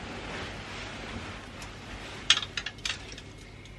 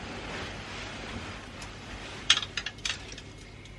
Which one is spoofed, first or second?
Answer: second